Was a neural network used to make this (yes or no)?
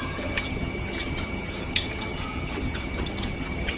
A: yes